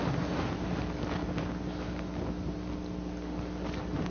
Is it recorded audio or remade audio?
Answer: recorded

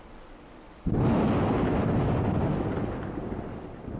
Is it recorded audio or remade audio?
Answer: recorded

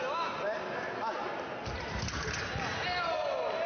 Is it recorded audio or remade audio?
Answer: recorded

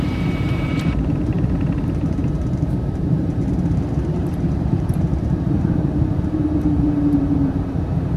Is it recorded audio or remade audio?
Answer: remade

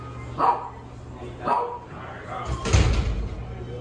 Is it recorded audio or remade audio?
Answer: recorded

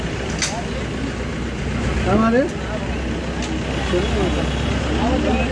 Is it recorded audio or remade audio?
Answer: recorded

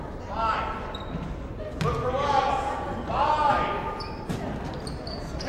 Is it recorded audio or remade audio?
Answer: recorded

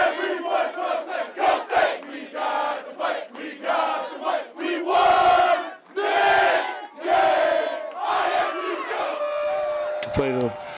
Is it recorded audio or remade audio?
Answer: recorded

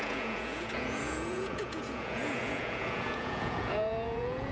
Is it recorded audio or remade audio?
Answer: remade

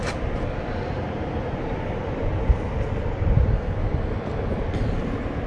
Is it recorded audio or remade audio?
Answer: recorded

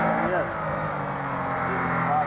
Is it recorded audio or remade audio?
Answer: recorded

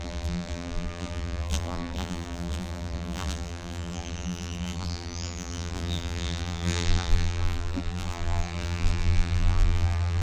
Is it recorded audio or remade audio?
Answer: remade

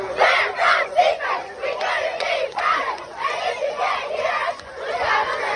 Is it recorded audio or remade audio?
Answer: remade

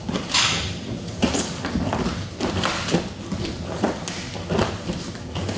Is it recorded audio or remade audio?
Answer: recorded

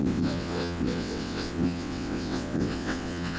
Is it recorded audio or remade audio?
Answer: remade